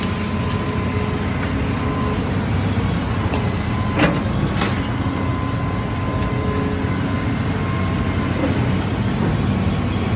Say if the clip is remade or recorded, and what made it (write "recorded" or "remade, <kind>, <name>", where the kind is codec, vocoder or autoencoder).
recorded